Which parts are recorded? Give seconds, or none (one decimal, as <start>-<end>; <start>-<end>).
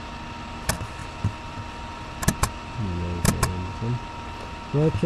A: 0.0-5.1